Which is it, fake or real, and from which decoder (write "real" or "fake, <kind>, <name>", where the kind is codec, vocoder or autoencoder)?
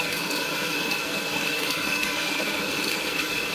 fake, codec, SNAC